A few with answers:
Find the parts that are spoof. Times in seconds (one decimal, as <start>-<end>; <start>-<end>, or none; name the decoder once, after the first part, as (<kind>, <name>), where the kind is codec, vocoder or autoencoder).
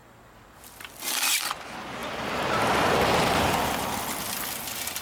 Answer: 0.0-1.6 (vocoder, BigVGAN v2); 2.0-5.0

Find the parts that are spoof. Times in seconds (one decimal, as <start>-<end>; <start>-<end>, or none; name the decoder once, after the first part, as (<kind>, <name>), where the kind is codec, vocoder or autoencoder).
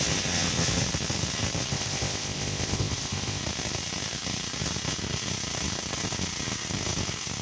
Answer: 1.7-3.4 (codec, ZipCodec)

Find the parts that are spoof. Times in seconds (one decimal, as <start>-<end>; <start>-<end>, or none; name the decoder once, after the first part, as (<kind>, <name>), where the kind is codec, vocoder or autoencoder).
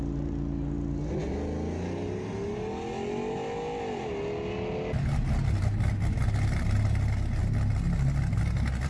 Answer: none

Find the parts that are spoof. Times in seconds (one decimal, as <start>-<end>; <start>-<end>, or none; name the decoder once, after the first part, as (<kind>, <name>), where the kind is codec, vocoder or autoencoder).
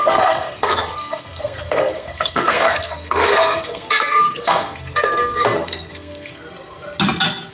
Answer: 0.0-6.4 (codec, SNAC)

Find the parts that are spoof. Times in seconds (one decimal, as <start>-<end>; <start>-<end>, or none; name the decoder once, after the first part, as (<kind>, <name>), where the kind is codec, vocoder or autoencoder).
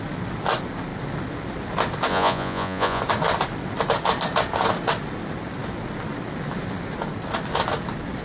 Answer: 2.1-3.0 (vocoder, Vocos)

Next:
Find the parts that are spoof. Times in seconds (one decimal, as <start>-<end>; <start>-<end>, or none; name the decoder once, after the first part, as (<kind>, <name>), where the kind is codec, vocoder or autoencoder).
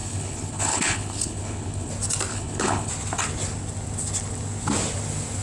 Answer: 0.0-1.9 (codec, HILCodec); 2.3-2.9